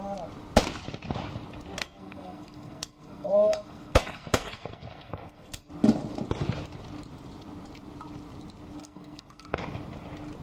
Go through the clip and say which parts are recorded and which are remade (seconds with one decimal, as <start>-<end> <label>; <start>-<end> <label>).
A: 0.0-1.8 recorded; 1.8-5.7 remade; 5.7-8.8 recorded; 8.8-9.6 remade; 9.6-10.4 recorded